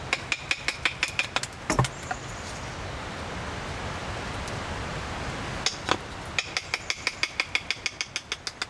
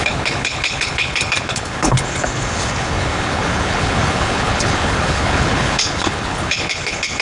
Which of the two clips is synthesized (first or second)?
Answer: second